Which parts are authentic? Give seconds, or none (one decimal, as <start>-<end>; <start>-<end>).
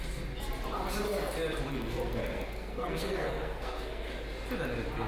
0.0-1.7; 4.1-5.1